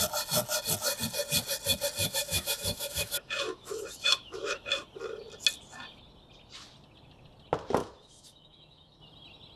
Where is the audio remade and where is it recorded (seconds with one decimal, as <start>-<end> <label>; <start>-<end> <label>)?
0.0-2.0 recorded; 2.0-4.7 remade; 4.7-7.8 recorded; 7.8-9.0 remade; 9.0-9.6 recorded